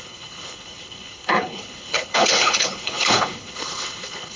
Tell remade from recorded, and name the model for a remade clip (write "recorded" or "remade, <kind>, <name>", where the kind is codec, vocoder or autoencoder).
remade, codec, HILCodec